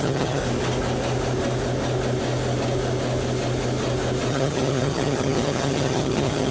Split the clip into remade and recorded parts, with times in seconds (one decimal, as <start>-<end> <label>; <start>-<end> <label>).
0.0-0.4 remade; 0.4-4.3 recorded; 4.3-6.5 remade